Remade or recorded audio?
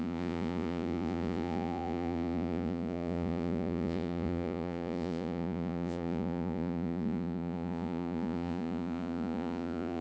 remade